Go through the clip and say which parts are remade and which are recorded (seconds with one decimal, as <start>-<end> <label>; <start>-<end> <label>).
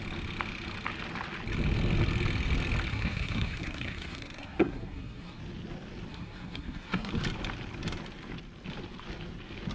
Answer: 0.0-2.9 recorded; 2.9-5.4 remade; 5.4-6.1 recorded; 6.1-7.1 remade; 7.1-9.7 recorded